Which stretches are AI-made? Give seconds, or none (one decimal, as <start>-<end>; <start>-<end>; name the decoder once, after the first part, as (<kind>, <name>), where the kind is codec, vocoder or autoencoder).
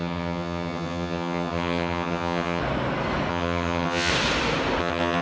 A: 0.0-2.6 (vocoder, HiFi-GAN); 3.3-4.1; 4.8-5.2